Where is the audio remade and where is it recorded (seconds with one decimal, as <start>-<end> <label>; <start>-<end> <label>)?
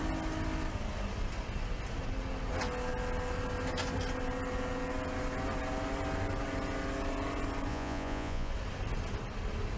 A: 0.0-7.7 recorded; 7.7-8.5 remade; 8.5-9.8 recorded